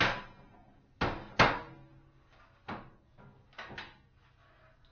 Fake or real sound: real